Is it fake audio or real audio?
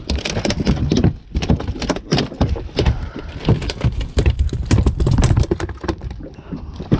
real